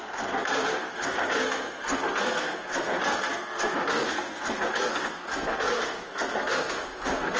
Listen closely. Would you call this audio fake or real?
fake